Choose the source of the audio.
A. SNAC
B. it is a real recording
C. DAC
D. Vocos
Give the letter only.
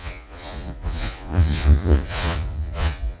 D